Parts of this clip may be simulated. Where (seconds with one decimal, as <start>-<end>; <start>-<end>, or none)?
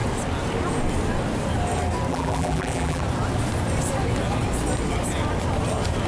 2.1-3.0